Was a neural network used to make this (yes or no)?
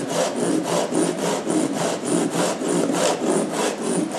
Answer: no